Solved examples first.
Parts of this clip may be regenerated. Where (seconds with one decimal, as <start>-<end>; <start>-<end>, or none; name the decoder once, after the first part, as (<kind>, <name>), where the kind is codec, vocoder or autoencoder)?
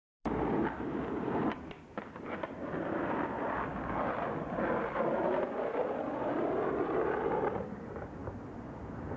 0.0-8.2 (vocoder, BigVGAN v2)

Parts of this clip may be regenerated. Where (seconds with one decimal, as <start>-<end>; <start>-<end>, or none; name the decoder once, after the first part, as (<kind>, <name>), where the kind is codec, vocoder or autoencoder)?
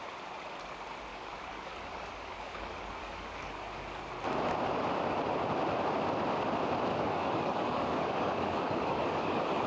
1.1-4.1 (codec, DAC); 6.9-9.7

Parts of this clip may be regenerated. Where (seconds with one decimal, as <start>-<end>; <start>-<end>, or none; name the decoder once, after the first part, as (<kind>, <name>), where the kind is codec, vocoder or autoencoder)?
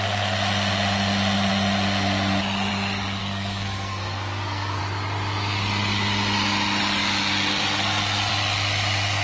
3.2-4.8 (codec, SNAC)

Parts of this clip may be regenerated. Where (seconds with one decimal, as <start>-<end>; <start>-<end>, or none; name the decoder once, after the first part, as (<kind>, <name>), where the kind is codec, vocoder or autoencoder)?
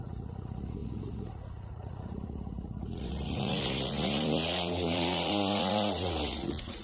0.0-6.8 (vocoder, Vocos)